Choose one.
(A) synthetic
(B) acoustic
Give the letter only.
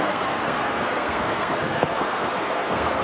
A